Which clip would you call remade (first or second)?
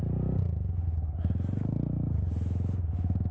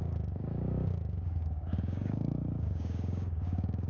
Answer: second